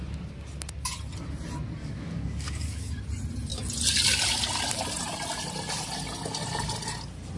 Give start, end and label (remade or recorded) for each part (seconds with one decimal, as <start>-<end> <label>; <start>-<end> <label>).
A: 0.0-1.8 recorded; 1.8-2.9 remade; 2.9-7.4 recorded